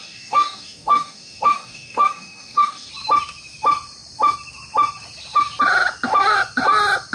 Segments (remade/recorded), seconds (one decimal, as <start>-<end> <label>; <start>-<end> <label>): 0.0-2.9 remade; 2.9-7.1 recorded